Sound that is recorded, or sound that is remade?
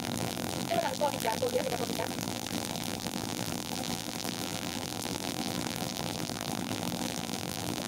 remade